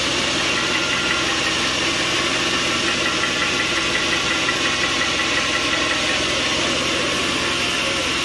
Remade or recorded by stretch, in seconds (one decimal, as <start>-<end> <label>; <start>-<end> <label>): 0.0-3.4 recorded; 3.4-4.5 remade; 4.5-8.2 recorded